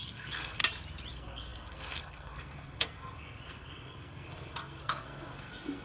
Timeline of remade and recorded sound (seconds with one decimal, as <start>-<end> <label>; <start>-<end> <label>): 0.0-0.6 remade; 0.6-1.1 recorded; 1.1-5.8 remade